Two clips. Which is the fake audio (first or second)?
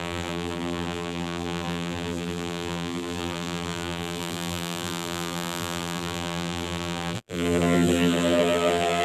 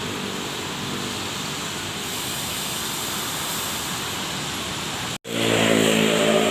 first